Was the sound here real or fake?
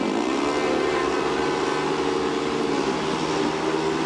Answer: real